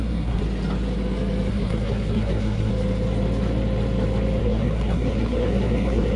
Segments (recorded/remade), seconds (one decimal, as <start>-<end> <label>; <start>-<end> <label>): 0.0-0.4 remade; 0.4-1.5 recorded; 1.5-2.7 remade; 2.7-4.4 recorded; 4.4-6.2 remade